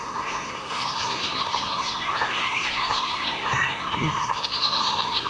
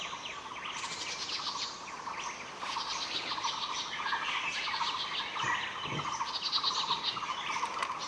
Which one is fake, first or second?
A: first